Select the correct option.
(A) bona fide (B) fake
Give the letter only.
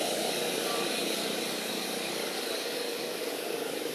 B